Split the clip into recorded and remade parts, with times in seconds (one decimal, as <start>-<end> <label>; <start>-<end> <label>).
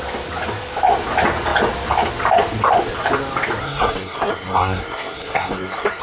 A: 0.0-3.6 recorded; 3.6-6.0 remade